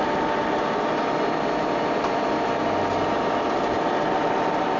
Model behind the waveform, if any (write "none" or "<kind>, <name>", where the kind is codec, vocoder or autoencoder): none